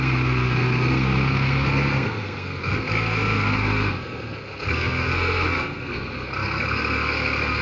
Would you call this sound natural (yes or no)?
no